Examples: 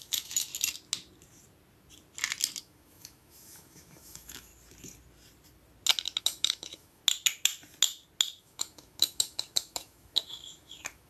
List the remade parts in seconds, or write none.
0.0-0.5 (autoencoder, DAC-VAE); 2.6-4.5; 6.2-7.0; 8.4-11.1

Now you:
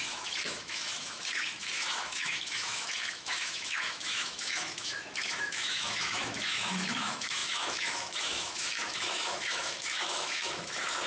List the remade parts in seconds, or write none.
0.0-11.1 (autoencoder, DAC-VAE)

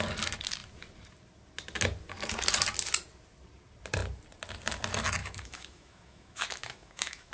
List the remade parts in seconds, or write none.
5.2-7.3 (autoencoder, DAC-VAE)

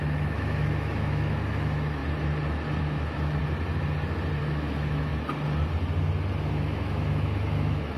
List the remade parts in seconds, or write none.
0.0-2.0 (autoencoder, DAC-VAE); 2.8-3.4; 4.4-5.1; 6.5-8.0

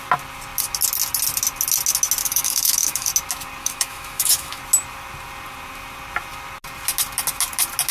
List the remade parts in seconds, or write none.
2.2-3.1 (autoencoder, DAC-VAE); 3.6-4.6

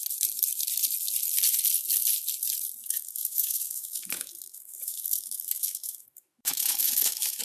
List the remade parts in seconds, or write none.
2.8-7.4 (autoencoder, DAC-VAE)